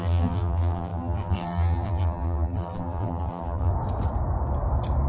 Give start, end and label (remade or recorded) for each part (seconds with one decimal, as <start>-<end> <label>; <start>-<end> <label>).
0.0-3.7 remade; 3.7-5.1 recorded